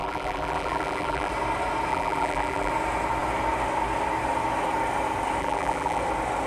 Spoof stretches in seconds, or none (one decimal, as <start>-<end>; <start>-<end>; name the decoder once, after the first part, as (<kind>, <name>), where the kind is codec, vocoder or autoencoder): 0.0-1.3 (vocoder, BigVGAN v2); 1.9-2.7; 5.4-6.0